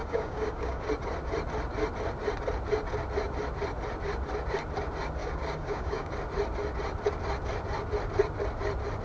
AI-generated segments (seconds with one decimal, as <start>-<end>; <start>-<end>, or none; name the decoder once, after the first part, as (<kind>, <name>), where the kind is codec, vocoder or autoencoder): 0.0-0.9 (codec, DAC); 5.2-6.1